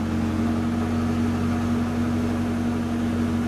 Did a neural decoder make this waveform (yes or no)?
no